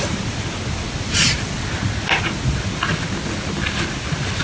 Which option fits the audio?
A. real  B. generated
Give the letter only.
A